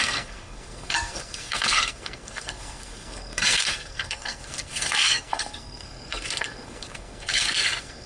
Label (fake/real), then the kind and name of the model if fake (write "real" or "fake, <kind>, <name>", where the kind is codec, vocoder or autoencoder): fake, codec, SNAC